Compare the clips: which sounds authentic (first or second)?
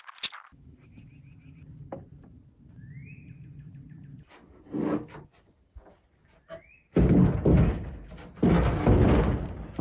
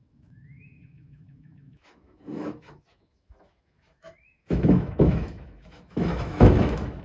first